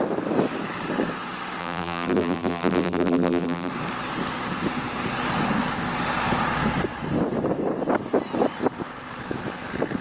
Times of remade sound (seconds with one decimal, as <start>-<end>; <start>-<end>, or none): 1.6-3.7